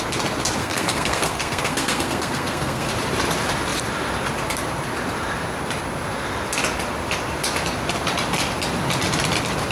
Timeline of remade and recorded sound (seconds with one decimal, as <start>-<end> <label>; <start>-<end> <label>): 0.0-0.6 recorded; 0.6-2.9 remade; 2.9-9.7 recorded